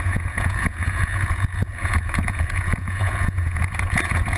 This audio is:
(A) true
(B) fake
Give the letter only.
B